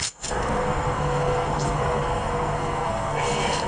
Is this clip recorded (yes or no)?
no